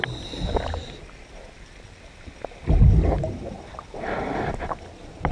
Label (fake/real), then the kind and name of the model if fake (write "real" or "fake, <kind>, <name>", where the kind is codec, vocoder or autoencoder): real